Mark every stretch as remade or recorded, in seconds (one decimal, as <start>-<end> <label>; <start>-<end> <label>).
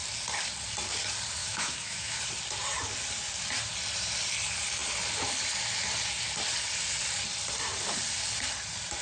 0.0-1.4 recorded; 1.4-2.2 remade; 2.2-9.0 recorded